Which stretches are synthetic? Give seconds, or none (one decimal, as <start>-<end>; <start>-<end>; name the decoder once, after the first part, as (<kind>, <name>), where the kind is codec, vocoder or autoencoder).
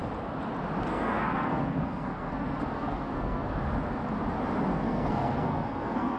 0.9-3.6 (codec, SNAC); 4.7-6.2